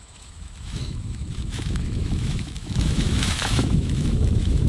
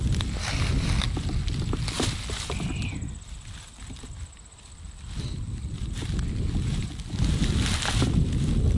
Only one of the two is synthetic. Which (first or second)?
first